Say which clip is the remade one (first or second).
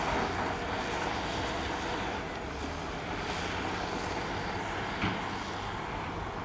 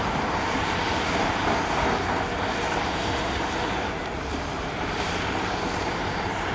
second